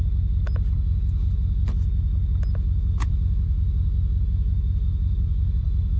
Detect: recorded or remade recorded